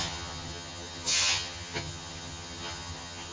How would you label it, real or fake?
fake